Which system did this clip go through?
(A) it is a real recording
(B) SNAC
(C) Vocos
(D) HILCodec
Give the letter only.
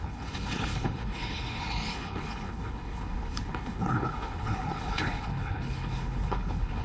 D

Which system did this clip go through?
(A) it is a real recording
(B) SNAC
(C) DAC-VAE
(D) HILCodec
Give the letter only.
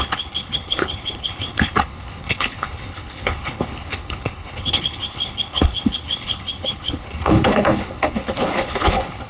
D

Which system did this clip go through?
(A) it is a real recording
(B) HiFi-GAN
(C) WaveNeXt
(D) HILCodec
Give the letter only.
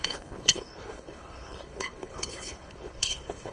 D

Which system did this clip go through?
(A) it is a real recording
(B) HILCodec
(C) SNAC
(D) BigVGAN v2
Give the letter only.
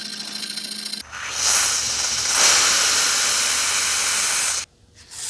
A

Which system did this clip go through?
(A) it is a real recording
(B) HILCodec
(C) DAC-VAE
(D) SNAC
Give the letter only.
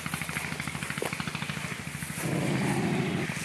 A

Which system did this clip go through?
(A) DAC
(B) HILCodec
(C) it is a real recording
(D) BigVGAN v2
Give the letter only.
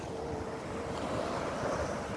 C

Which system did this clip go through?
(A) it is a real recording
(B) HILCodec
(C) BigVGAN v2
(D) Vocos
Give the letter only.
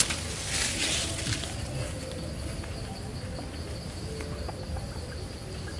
A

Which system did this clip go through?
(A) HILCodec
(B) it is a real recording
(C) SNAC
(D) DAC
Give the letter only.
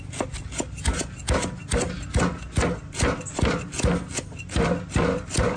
B